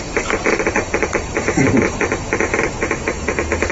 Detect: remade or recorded remade